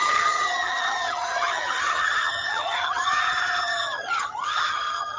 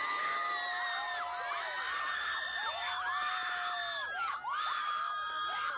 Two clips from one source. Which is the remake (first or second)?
first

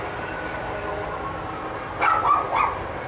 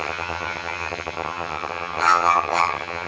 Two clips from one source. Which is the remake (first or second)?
second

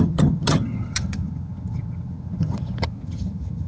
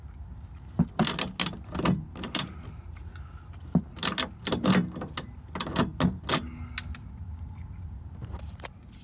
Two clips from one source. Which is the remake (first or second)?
first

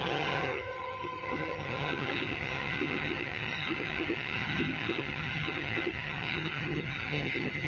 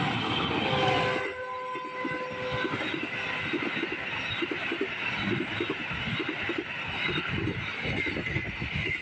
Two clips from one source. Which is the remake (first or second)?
first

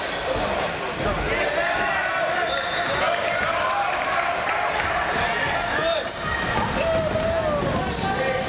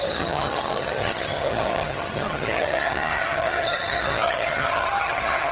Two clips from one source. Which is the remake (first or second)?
second